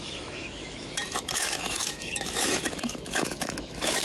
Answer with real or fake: fake